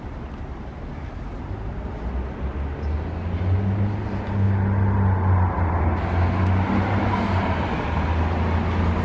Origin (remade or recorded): recorded